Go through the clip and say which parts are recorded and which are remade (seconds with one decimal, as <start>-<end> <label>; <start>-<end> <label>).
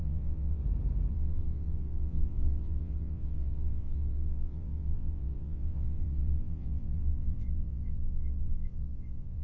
0.0-0.6 remade; 0.6-1.1 recorded; 1.1-9.4 remade